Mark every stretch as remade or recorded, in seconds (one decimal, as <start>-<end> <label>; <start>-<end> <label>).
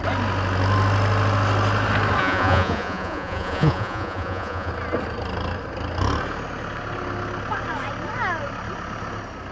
0.0-2.2 recorded; 2.2-4.7 remade; 4.7-9.5 recorded